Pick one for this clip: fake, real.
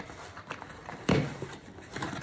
real